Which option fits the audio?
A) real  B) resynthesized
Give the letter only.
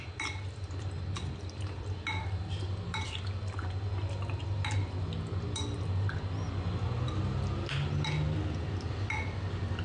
A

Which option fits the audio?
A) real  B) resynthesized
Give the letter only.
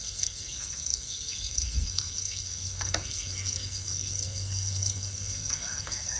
B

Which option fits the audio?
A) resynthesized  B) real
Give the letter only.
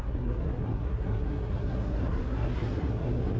A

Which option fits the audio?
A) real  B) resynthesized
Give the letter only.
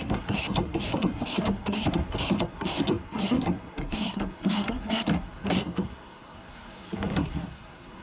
B